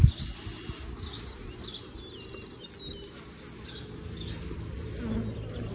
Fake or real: real